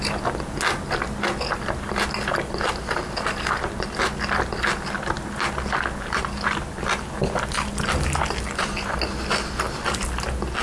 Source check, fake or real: real